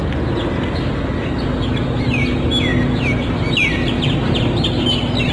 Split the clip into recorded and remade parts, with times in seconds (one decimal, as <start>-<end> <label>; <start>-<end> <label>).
0.0-5.3 recorded